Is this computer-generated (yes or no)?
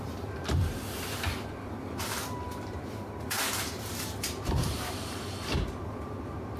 yes